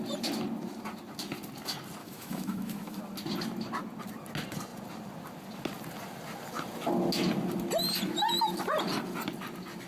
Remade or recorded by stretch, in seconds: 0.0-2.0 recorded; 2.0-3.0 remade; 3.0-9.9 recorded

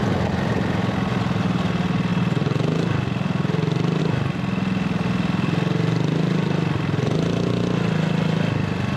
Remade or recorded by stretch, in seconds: 0.0-9.0 recorded

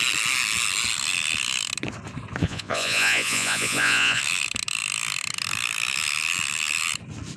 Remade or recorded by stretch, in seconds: 0.0-2.4 recorded; 2.4-4.2 remade; 4.2-7.4 recorded